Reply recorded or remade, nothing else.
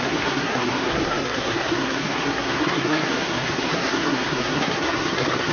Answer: remade